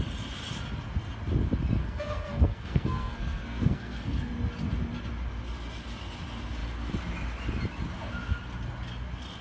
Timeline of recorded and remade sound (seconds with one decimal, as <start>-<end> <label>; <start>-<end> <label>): 0.0-1.8 recorded; 1.8-4.3 remade; 4.3-9.4 recorded